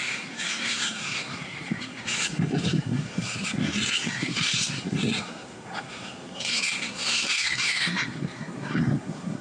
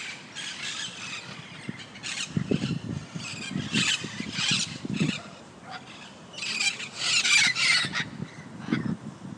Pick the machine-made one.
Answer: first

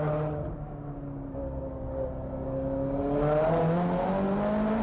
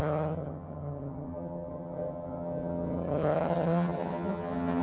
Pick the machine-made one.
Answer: second